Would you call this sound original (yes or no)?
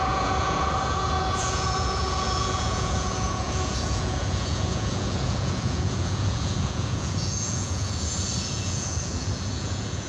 no